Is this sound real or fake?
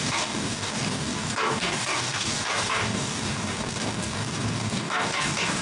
fake